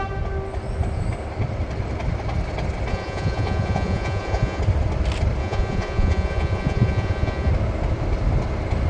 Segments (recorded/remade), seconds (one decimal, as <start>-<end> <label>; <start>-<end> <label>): 0.0-2.9 recorded; 2.9-4.6 remade; 4.6-5.4 recorded; 5.4-7.5 remade; 7.5-8.9 recorded